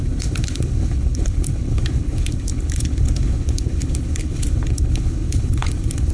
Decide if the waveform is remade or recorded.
remade